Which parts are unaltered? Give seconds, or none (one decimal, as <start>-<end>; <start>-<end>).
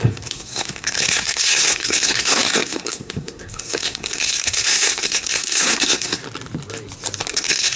6.2-7.3